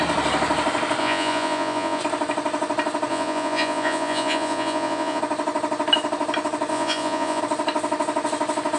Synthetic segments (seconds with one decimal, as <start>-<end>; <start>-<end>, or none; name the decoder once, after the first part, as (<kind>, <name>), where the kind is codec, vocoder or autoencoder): 1.0-2.0 (vocoder, Vocos); 3.1-5.2; 6.7-7.4